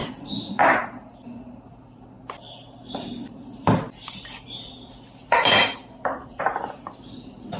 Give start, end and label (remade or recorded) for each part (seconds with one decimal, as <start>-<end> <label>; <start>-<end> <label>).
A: 0.0-0.6 remade; 0.6-7.6 recorded